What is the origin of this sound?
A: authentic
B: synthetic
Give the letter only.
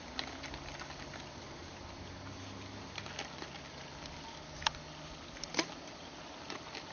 A